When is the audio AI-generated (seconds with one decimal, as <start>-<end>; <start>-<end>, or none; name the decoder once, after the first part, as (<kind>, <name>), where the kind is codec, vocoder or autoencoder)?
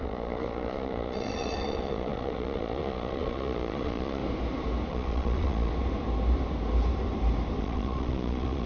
0.0-4.2 (vocoder, Vocos); 4.9-5.7; 7.6-8.7